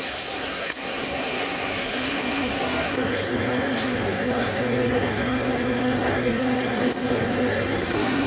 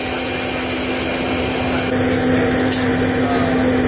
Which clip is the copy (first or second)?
first